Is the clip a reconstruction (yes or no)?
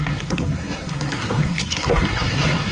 yes